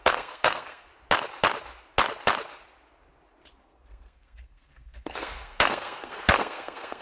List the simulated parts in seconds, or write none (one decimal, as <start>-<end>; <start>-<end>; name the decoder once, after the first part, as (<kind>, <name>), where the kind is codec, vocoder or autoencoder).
0.0-0.9 (codec, SNAC); 3.5-7.0